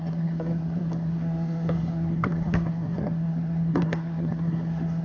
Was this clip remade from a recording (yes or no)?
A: yes